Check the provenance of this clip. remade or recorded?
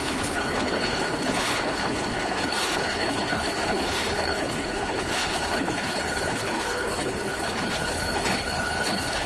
remade